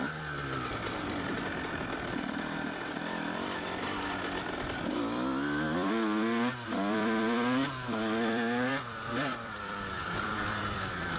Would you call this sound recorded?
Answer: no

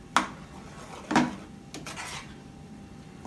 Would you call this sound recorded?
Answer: yes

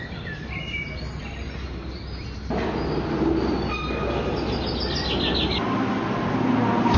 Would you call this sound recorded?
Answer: yes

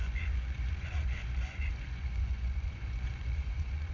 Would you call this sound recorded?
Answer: no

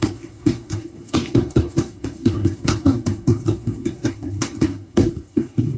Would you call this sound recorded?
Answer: no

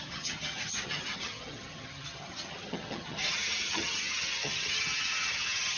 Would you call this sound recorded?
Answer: no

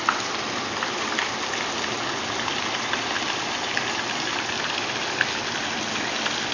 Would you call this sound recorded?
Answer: yes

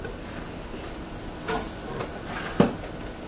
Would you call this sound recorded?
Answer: yes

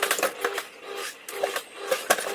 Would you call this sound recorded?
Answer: yes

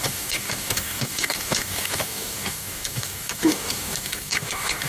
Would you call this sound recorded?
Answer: no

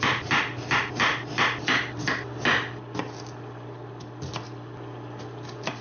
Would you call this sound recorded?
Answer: yes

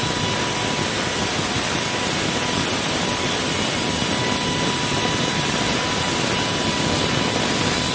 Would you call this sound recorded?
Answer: yes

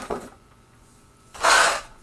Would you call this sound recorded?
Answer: no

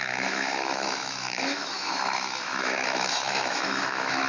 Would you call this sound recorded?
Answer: no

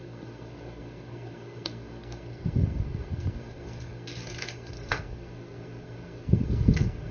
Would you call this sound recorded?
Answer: no